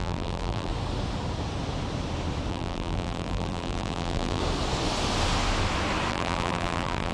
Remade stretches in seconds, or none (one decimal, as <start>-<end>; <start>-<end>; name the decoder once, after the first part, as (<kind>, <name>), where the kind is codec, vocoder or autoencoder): 0.0-0.7 (vocoder, BigVGAN v2); 2.5-4.4; 6.1-7.1